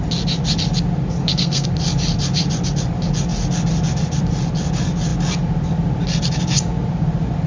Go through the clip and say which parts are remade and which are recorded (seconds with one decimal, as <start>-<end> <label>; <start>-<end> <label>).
0.0-1.2 recorded; 1.2-1.7 remade; 1.7-7.5 recorded